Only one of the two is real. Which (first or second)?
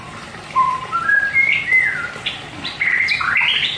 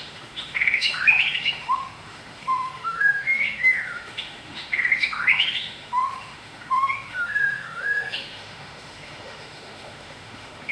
first